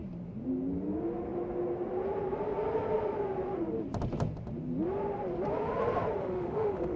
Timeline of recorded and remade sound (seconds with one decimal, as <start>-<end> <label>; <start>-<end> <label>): 0.0-6.2 recorded; 6.2-7.0 remade